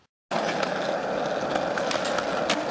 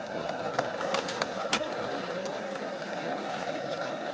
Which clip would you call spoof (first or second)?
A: second